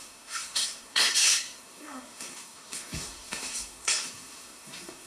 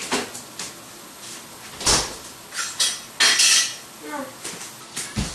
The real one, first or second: second